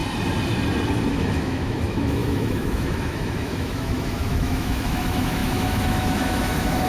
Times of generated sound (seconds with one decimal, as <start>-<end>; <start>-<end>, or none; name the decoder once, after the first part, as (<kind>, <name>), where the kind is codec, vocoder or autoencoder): 1.1-6.9 (autoencoder, DAC-VAE)